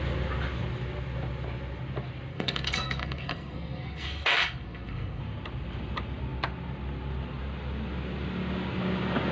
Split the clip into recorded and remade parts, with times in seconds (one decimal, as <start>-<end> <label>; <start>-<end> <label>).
0.0-2.3 recorded; 2.3-5.2 remade; 5.2-9.3 recorded